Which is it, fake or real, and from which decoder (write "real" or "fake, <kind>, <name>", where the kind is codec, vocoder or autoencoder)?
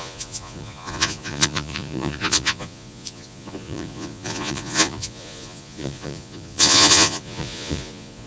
fake, vocoder, Vocos